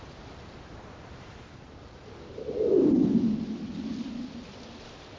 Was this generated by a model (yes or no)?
no